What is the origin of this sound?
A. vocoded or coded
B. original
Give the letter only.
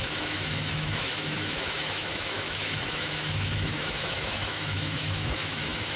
A